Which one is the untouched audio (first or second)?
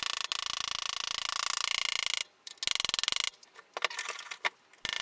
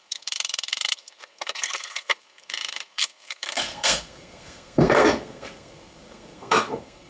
first